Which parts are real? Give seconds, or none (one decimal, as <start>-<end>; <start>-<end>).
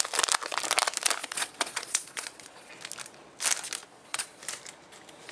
0.0-1.2; 2.7-3.8; 4.4-5.3